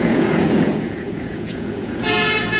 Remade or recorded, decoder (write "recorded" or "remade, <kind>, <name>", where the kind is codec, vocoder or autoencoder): remade, vocoder, Vocos